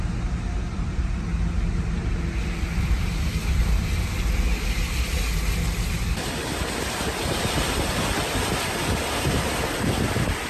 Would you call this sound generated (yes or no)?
no